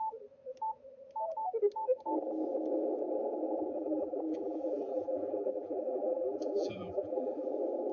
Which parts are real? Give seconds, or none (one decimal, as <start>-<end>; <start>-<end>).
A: 0.0-3.7; 7.5-7.9